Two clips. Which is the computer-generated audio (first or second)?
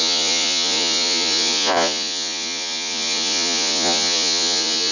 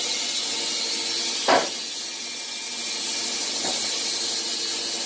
first